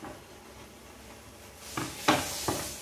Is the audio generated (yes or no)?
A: no